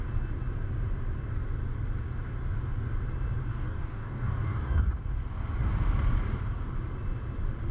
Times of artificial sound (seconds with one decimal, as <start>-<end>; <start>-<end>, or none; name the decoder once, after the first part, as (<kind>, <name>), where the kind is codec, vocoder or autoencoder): 3.5-4.9 (codec, DAC)

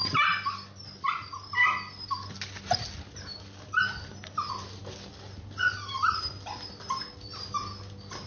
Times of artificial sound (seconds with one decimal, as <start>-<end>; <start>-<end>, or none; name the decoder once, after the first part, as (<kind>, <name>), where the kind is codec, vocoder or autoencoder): none

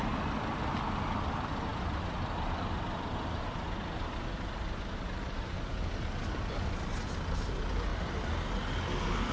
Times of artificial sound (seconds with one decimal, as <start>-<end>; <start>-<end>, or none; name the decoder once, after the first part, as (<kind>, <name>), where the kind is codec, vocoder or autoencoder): none

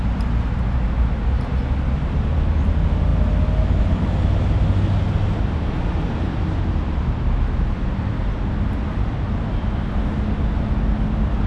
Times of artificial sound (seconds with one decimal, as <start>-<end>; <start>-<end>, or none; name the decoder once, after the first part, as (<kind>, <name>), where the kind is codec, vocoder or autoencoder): none

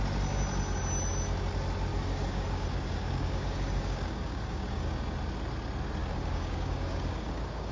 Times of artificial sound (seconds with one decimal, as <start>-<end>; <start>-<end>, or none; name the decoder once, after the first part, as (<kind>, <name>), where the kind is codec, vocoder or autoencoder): 1.9-5.0 (codec, DAC); 6.0-7.7